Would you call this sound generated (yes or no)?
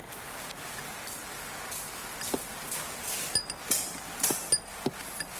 no